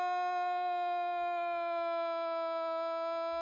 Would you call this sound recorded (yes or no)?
yes